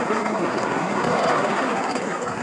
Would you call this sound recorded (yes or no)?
no